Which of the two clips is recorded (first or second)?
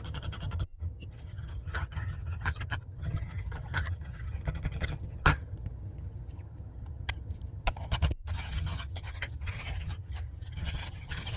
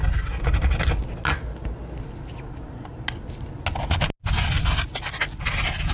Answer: second